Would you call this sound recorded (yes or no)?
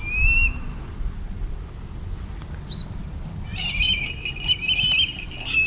yes